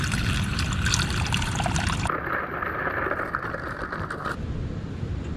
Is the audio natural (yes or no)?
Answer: yes